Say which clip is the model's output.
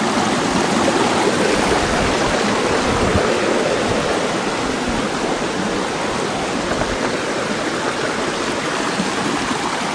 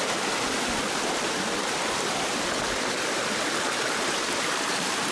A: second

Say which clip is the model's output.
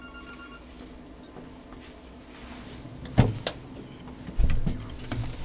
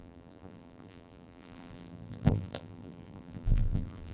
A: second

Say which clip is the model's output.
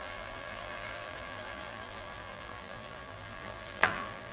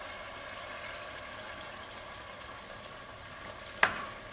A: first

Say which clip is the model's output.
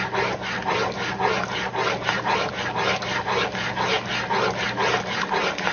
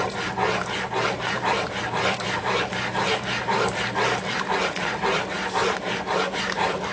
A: second